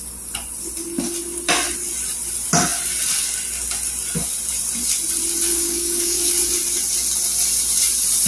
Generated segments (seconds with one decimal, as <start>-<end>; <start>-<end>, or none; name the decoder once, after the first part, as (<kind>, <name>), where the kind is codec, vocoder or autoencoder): 5.5-6.3 (codec, DAC)